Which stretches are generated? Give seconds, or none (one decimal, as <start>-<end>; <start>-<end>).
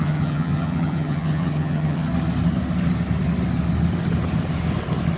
0.0-2.1